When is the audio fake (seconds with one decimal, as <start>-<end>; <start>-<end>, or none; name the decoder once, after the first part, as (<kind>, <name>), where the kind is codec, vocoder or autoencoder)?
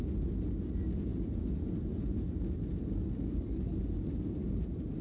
4.4-5.0 (vocoder, BigVGAN v2)